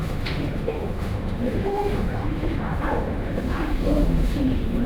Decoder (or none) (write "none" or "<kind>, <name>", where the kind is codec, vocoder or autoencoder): autoencoder, DAC-VAE